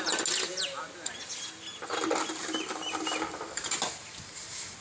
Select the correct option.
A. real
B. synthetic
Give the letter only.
A